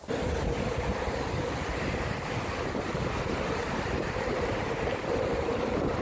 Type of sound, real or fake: fake